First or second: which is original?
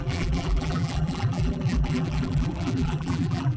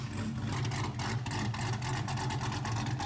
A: second